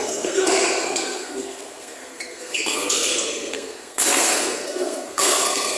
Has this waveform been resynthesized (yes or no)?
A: yes